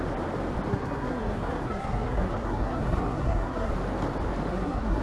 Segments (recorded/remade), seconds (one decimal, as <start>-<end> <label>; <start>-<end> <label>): 0.0-0.7 recorded; 0.7-3.7 remade; 3.7-4.5 recorded; 4.5-5.0 remade